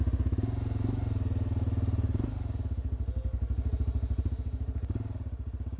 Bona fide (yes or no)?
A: yes